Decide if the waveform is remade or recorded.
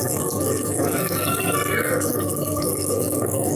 remade